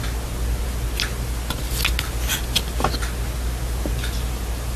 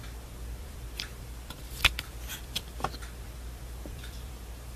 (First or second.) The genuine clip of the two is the first